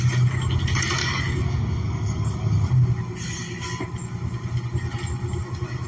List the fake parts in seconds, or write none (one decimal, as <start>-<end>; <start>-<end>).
1.0-2.7